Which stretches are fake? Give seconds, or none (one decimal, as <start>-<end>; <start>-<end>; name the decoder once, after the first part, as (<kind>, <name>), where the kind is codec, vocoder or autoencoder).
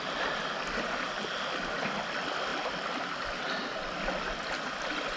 none